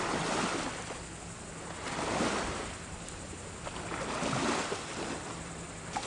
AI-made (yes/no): no